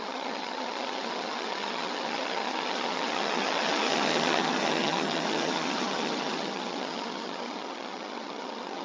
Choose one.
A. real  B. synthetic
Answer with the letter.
B